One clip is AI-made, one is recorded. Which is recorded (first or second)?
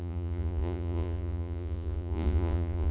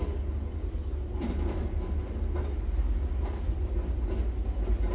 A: second